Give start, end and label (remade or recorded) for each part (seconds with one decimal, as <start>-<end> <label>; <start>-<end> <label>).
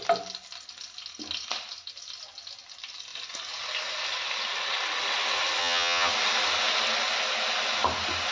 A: 0.0-5.6 recorded; 5.6-6.1 remade; 6.1-8.3 recorded